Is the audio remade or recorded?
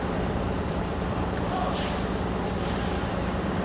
remade